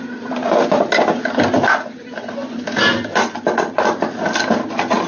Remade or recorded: recorded